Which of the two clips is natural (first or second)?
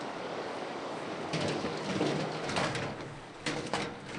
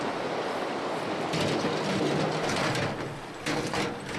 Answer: second